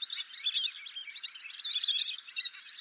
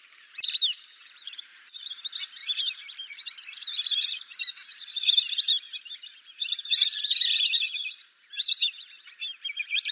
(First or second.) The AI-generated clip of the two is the second